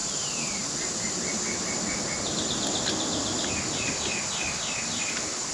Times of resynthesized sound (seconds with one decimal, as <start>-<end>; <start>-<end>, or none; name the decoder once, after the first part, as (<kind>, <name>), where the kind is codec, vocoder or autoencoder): none